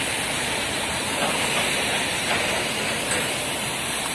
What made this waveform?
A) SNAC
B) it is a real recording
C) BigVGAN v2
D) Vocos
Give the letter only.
B